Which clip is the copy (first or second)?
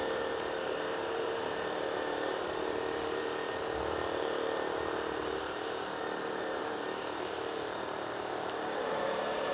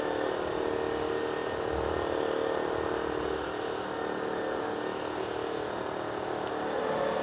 first